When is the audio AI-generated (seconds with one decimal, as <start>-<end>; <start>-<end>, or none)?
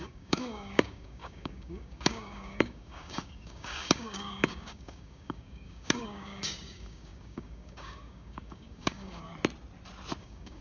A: 0.0-9.3; 10.2-10.6